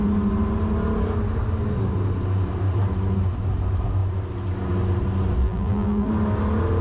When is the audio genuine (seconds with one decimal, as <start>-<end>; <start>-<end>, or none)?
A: 0.0-5.4; 6.1-6.8